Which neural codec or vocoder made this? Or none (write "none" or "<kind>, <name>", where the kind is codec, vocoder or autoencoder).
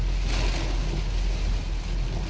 none